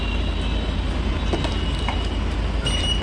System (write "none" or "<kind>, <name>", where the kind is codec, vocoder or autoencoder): none